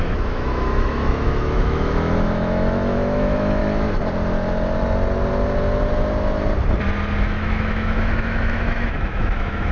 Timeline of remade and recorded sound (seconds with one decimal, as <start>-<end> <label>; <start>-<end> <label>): 0.0-3.6 remade; 3.6-7.2 recorded; 7.2-9.7 remade